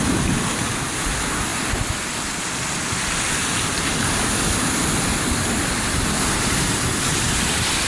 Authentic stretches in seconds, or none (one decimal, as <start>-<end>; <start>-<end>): 0.0-7.1